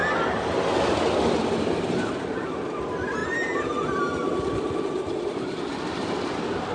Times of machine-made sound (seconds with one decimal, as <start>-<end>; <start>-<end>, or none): none